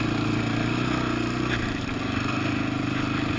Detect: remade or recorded recorded